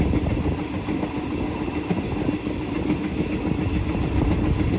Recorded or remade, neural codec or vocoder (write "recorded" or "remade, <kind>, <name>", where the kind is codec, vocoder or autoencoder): recorded